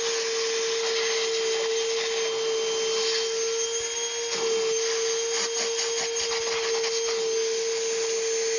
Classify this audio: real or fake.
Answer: real